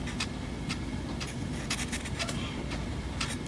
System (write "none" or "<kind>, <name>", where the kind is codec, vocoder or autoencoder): none